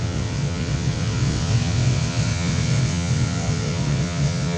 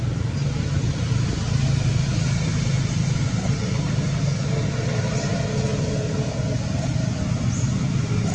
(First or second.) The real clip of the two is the second